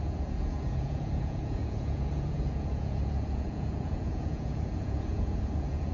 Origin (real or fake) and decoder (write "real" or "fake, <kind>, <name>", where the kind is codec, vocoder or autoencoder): fake, vocoder, Vocos